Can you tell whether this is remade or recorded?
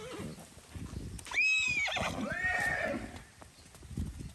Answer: recorded